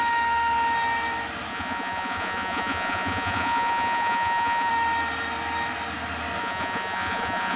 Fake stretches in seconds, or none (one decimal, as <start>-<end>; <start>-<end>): 1.5-4.7; 6.4-7.6